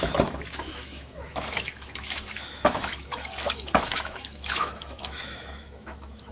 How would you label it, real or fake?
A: fake